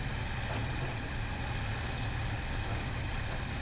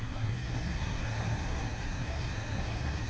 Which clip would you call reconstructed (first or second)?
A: second